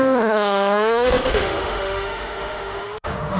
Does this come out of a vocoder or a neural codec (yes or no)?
yes